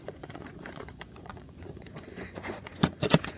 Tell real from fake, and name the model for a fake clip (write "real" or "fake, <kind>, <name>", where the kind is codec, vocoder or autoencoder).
fake, vocoder, Vocos